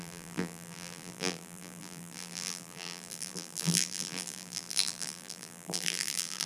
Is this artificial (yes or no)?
yes